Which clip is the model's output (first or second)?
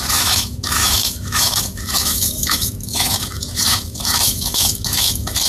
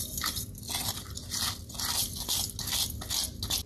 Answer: first